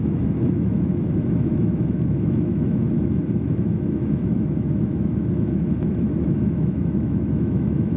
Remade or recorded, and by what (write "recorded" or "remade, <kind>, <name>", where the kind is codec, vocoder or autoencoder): remade, autoencoder, DAC-VAE